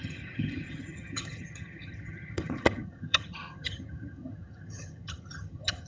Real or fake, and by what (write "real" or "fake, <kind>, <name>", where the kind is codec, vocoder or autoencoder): fake, vocoder, HiFi-GAN